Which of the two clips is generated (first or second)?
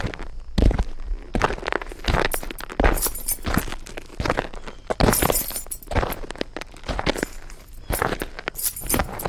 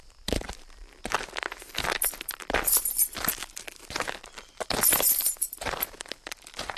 second